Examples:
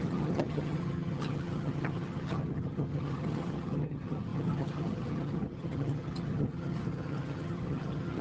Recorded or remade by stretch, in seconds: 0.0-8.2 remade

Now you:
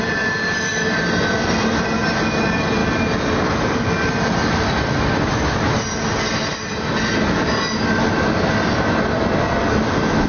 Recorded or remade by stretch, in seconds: 0.0-10.3 recorded